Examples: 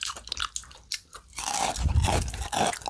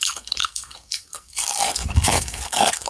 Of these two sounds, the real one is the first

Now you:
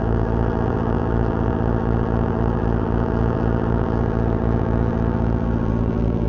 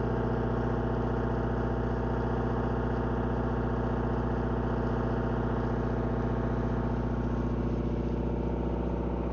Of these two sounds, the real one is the second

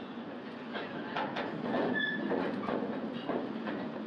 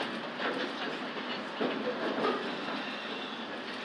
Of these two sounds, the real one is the second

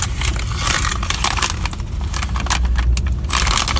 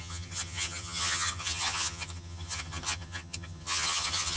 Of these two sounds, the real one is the first